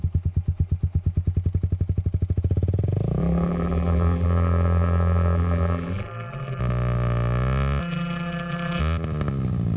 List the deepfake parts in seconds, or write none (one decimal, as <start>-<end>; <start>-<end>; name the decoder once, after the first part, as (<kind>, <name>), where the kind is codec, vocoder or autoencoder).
3.2-6.6 (vocoder, BigVGAN v2); 7.8-8.8